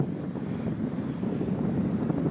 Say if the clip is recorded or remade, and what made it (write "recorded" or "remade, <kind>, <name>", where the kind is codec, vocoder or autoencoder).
recorded